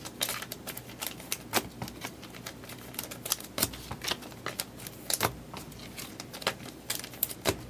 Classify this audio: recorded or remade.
recorded